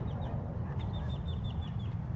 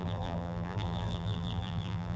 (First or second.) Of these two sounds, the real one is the first